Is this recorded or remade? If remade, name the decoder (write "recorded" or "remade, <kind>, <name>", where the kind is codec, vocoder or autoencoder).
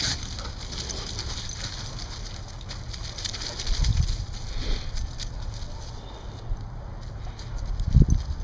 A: recorded